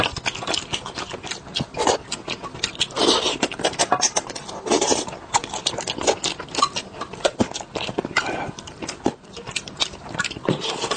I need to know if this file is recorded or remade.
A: recorded